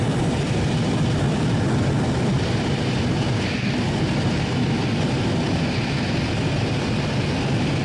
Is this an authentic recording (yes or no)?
yes